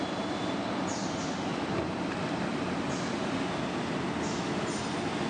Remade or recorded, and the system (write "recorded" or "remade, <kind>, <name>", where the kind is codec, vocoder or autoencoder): recorded